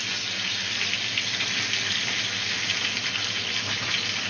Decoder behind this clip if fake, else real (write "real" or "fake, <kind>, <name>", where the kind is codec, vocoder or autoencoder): real